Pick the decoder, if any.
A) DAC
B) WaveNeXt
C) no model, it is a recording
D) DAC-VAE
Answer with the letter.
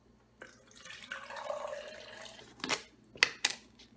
C